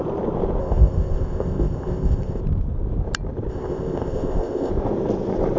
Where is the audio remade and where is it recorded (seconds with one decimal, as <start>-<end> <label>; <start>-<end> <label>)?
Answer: 0.0-0.6 recorded; 0.6-2.4 remade; 2.4-3.5 recorded; 3.5-4.7 remade; 4.7-5.6 recorded